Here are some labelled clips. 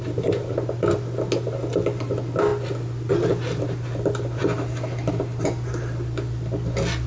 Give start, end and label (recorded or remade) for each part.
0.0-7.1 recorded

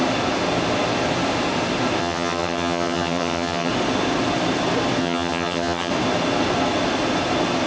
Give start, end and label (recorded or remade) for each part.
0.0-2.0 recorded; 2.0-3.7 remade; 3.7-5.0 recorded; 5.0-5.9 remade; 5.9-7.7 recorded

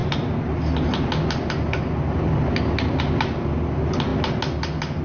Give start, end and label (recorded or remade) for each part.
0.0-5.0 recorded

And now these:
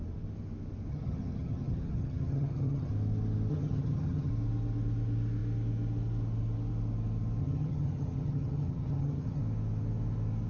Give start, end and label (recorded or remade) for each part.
0.0-0.9 recorded; 0.9-2.9 remade; 2.9-3.5 recorded; 3.5-4.3 remade; 4.3-7.4 recorded; 7.4-9.4 remade; 9.4-10.5 recorded